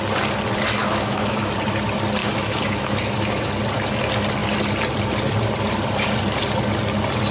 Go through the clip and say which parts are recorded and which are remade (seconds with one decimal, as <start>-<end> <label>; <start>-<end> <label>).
0.0-0.8 recorded; 0.8-1.5 remade; 1.5-2.2 recorded; 2.2-3.5 remade; 3.5-7.3 recorded